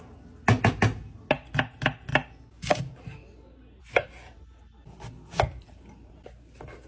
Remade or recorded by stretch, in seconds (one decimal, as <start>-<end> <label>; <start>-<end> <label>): 0.0-6.9 recorded